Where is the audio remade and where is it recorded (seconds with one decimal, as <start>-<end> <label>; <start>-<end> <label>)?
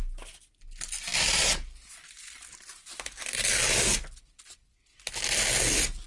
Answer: 0.0-6.1 recorded